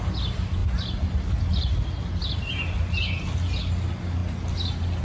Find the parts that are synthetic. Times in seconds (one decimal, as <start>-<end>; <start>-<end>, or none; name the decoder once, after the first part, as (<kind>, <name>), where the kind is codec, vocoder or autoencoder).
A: none